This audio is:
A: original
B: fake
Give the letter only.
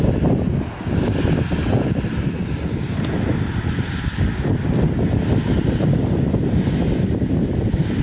A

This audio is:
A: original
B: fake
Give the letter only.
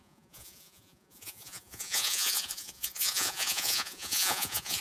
B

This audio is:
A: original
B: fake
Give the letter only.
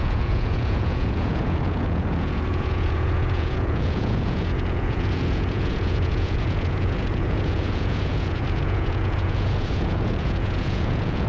B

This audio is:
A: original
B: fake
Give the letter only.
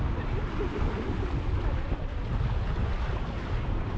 A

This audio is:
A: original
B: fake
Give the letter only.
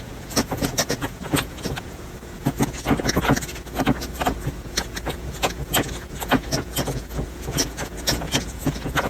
B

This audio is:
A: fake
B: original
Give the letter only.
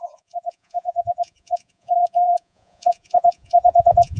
A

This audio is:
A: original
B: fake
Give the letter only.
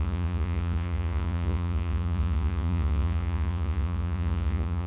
B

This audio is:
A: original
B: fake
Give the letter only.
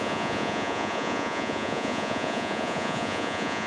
B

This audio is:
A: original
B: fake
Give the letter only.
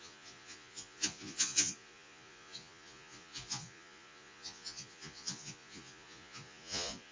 B